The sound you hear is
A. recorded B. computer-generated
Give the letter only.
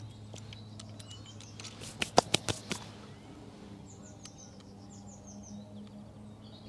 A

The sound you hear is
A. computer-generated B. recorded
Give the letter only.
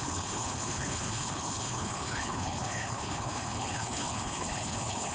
A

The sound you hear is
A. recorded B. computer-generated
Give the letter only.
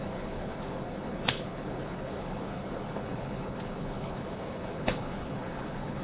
B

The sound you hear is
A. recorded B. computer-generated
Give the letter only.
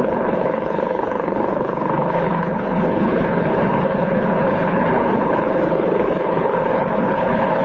B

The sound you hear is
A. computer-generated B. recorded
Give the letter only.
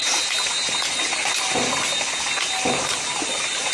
B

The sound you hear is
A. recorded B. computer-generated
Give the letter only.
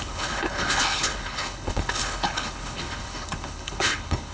B